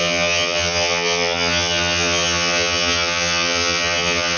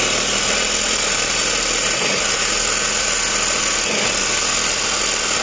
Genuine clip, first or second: second